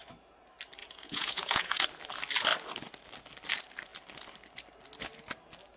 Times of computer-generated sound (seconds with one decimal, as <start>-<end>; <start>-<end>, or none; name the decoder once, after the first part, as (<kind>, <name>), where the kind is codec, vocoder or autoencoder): 0.8-1.8 (vocoder, Vocos)